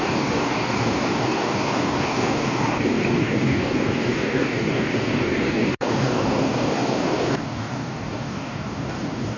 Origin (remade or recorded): remade